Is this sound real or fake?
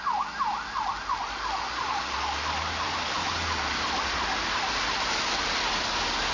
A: real